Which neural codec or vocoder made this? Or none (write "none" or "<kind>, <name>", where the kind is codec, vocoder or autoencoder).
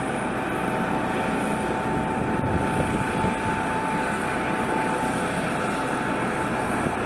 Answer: none